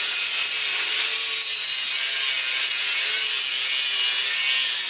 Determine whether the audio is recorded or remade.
recorded